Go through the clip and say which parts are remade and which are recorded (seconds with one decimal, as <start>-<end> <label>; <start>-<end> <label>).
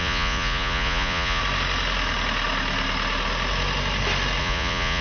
0.0-1.4 remade; 1.4-4.4 recorded; 4.4-5.0 remade